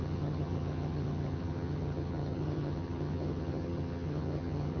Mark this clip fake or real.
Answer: fake